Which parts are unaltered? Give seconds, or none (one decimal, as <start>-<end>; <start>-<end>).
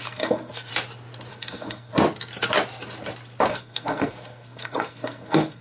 0.7-1.3; 1.9-3.5